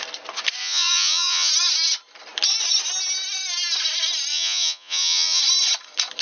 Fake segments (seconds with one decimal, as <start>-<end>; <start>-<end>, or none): 0.6-1.5; 4.3-5.4